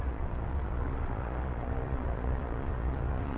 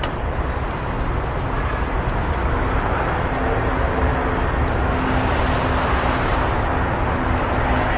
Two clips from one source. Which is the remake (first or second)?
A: first